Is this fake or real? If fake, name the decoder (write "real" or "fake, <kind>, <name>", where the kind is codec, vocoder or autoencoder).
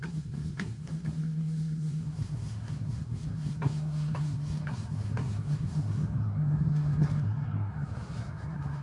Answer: fake, codec, SNAC